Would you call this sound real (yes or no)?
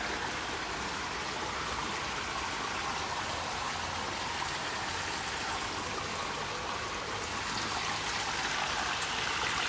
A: yes